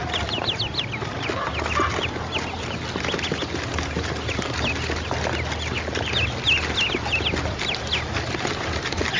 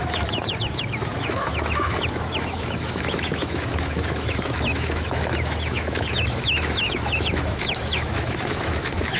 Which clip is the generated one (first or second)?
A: second